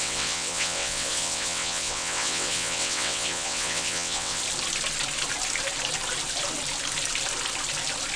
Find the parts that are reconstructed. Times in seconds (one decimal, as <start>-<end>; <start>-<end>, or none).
0.0-4.4